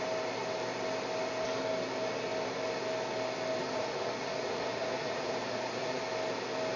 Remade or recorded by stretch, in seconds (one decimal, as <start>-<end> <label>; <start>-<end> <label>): 0.0-3.6 recorded; 3.6-6.0 remade; 6.0-6.8 recorded